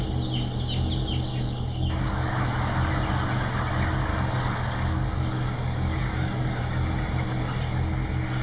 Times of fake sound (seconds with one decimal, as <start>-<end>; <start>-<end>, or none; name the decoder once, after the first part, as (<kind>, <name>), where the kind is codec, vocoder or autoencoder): 1.3-2.5 (codec, DAC); 4.1-6.6